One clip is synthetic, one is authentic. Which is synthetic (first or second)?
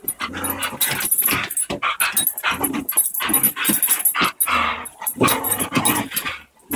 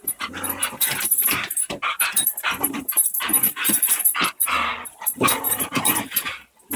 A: second